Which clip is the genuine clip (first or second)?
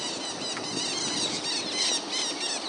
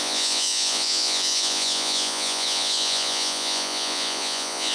first